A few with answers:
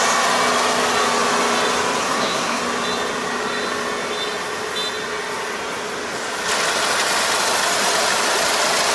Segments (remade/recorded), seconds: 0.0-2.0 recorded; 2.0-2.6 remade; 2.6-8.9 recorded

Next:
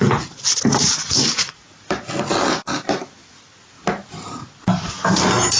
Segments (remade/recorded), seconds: 0.0-5.6 recorded